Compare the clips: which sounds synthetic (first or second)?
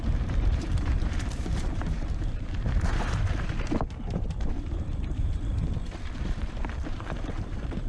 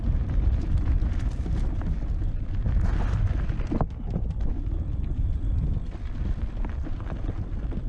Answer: first